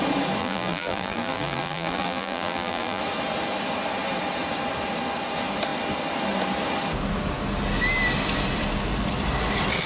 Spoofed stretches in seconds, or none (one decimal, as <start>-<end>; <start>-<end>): 0.4-3.0